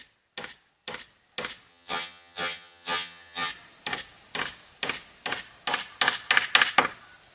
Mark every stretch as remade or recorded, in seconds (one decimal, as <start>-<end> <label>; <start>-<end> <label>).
0.0-1.7 recorded; 1.7-3.5 remade; 3.5-7.3 recorded

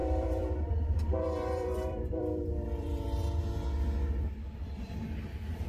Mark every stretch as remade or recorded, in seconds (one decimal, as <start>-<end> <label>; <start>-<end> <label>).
0.0-3.4 remade; 3.4-5.7 recorded

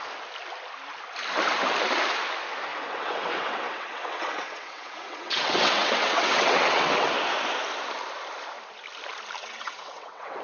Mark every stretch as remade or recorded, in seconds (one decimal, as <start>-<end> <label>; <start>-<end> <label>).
0.0-2.7 recorded; 2.7-7.1 remade; 7.1-9.4 recorded; 9.4-10.4 remade

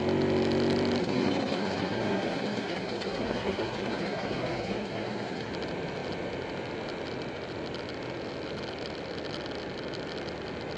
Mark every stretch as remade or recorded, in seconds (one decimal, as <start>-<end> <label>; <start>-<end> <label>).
0.0-1.0 recorded; 1.0-5.5 remade; 5.5-10.8 recorded

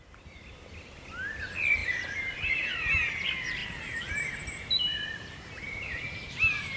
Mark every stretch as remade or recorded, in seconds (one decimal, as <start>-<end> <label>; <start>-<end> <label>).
0.0-1.8 recorded; 1.8-2.7 remade; 2.7-3.6 recorded; 3.6-6.8 remade

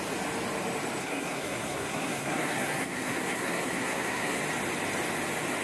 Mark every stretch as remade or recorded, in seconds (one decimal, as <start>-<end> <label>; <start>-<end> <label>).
0.0-1.0 recorded; 1.0-4.4 remade; 4.4-5.6 recorded

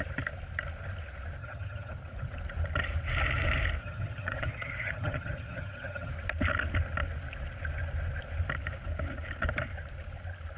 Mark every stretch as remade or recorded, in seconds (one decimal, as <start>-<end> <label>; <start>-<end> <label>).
0.0-1.4 recorded; 1.4-1.9 remade; 1.9-3.8 recorded; 3.8-6.1 remade; 6.1-10.6 recorded